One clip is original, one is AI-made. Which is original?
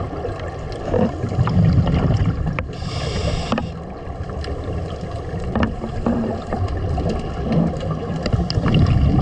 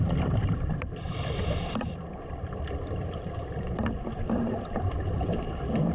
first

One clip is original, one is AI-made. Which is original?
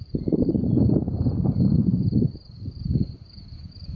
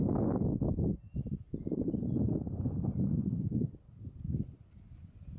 second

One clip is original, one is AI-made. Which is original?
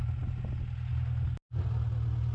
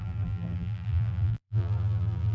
first